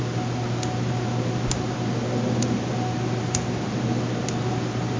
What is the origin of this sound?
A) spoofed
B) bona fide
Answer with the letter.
A